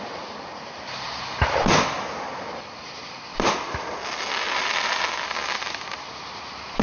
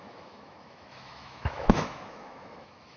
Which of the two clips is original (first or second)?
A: first